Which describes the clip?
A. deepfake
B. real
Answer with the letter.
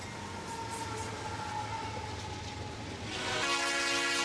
B